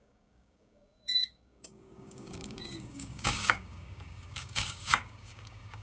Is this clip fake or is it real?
fake